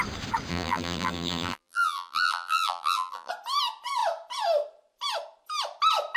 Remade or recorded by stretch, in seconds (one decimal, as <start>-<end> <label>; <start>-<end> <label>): 0.0-0.5 recorded; 0.5-3.3 remade; 3.3-6.2 recorded